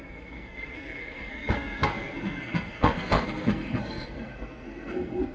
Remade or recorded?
remade